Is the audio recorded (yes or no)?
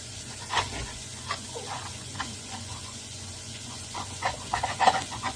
no